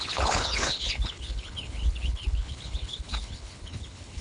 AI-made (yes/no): yes